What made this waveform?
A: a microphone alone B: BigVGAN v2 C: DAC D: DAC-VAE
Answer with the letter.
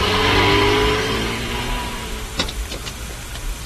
A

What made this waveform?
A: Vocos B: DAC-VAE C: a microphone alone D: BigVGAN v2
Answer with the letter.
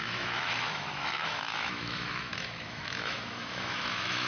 B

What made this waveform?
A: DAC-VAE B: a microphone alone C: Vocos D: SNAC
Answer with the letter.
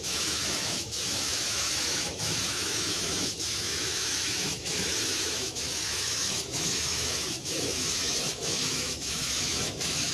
A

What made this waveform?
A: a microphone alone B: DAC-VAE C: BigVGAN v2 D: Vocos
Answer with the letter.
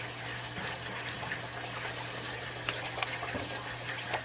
A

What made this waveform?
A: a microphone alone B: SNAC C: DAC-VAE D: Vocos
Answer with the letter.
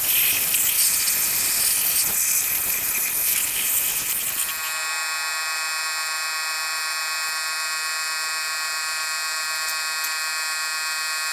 A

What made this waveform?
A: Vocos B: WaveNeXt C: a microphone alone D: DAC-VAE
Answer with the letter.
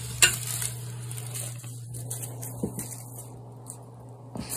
C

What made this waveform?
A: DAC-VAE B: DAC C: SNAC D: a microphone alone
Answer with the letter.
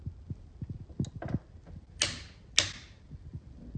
D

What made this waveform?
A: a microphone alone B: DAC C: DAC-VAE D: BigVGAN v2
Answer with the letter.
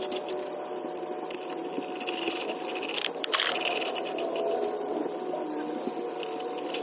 A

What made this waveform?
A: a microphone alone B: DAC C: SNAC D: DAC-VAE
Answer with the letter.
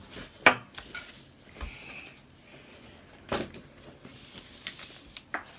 A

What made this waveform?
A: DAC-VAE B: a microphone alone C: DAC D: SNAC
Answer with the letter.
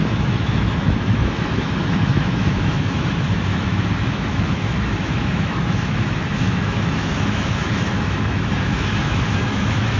A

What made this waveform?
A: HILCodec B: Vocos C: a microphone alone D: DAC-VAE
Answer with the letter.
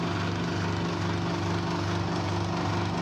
C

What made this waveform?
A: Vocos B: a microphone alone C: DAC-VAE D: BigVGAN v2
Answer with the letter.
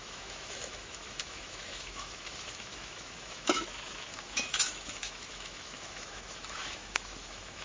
C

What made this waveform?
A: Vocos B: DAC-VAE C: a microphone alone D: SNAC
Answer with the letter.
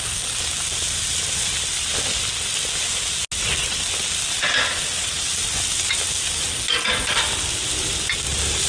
C